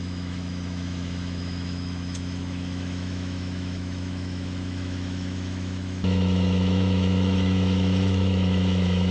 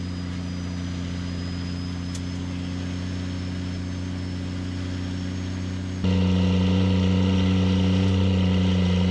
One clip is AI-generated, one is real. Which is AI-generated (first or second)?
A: first